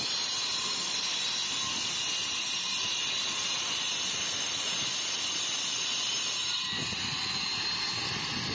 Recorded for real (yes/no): yes